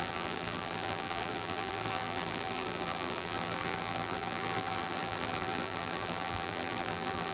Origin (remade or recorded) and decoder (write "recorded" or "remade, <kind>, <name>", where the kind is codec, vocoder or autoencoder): remade, vocoder, BigVGAN v2